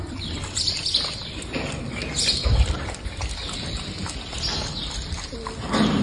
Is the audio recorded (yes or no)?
yes